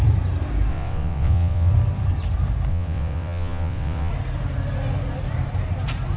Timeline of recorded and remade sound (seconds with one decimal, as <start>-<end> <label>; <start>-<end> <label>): 0.0-0.7 recorded; 0.7-1.7 remade; 1.7-2.7 recorded; 2.7-4.1 remade; 4.1-6.2 recorded